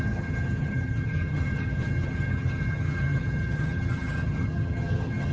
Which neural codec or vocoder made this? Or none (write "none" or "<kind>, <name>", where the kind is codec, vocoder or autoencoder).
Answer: vocoder, HiFi-GAN